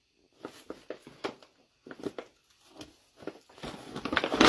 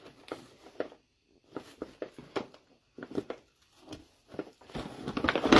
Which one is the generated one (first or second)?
second